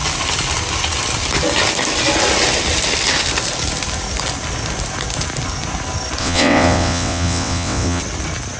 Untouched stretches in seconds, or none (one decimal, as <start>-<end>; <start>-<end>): 0.0-6.2; 8.0-8.6